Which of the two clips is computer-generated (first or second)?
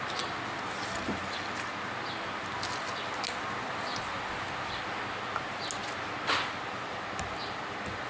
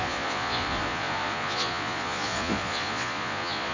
second